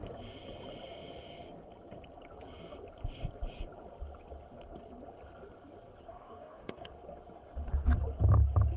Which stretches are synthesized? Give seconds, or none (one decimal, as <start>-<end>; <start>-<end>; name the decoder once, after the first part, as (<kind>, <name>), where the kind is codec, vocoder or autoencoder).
6.1-6.9 (codec, DAC)